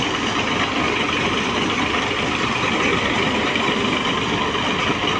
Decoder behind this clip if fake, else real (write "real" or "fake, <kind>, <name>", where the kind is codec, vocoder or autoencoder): real